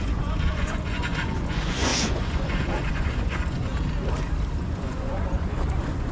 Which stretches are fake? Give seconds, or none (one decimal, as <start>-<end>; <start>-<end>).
0.0-3.7; 4.6-6.1